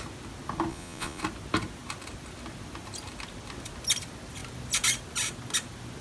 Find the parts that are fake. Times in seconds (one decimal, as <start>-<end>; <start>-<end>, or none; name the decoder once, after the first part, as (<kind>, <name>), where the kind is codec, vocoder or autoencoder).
0.7-1.2 (vocoder, Vocos)